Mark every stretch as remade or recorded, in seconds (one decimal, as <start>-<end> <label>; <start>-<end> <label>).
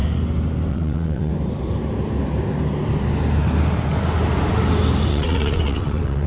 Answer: 0.0-0.7 recorded; 0.7-1.3 remade; 1.3-5.1 recorded; 5.1-6.3 remade